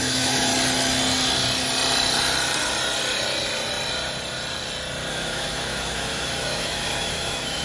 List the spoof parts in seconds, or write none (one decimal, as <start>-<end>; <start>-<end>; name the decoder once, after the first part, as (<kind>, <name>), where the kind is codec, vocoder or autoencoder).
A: 0.0-0.5 (autoencoder, DAC-VAE); 5.1-7.6